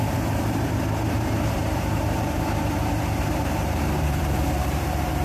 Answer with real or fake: fake